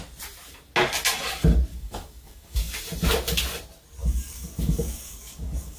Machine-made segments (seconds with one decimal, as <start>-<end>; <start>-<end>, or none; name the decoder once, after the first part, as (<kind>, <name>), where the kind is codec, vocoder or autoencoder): 1.7-2.7 (codec, DAC); 4.0-5.8